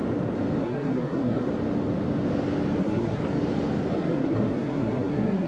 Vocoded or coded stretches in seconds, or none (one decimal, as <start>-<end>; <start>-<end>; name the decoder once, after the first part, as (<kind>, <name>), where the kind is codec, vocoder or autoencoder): 0.6-1.5 (codec, SNAC); 2.8-3.2; 3.9-5.5